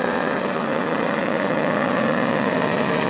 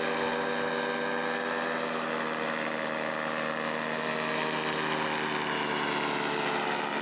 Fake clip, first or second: first